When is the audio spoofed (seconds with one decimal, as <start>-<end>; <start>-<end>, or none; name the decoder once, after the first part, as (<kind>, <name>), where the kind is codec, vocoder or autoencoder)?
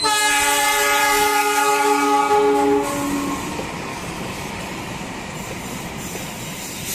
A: 1.0-2.3 (codec, DAC); 3.9-4.5